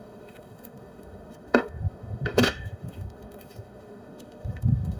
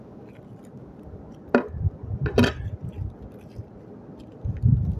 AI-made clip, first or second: first